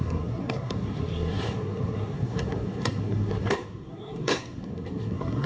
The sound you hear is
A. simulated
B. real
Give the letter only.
A